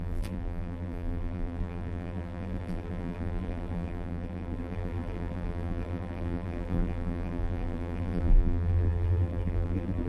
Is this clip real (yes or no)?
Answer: no